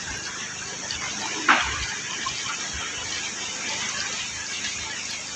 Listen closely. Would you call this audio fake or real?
real